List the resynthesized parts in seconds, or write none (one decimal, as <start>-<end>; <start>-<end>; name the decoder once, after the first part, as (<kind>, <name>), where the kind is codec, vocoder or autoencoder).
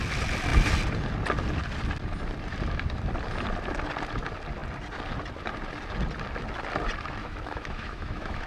7.2-8.5 (autoencoder, DAC-VAE)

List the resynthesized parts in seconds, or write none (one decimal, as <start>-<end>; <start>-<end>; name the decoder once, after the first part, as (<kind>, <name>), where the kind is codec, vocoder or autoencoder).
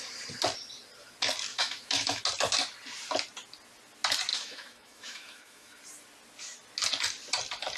1.5-2.2 (autoencoder, DAC-VAE); 4.3-5.8